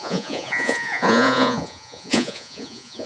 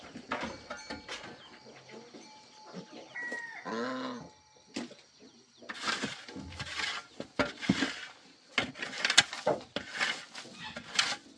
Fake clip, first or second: first